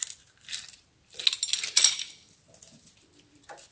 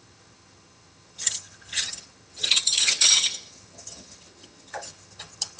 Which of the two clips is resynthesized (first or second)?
second